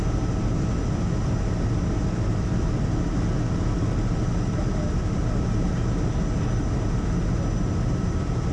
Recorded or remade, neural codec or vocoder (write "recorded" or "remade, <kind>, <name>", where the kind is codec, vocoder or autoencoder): recorded